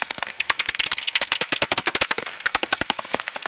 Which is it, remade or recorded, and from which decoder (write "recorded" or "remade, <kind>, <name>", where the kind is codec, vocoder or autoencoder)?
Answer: remade, codec, SNAC